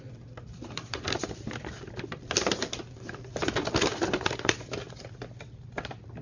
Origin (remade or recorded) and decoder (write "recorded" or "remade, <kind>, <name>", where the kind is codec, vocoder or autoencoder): remade, vocoder, BigVGAN v2